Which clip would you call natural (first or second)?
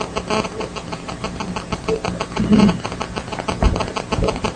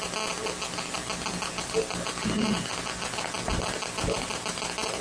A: second